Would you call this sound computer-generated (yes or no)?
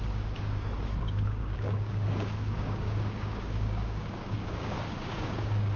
yes